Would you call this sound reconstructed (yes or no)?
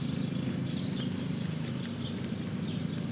no